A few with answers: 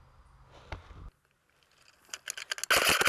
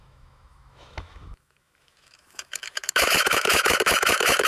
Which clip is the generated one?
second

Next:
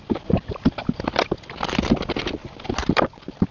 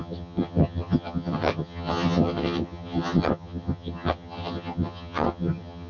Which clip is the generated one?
second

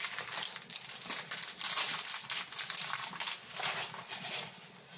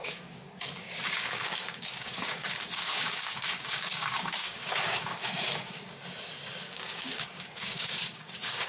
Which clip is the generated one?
second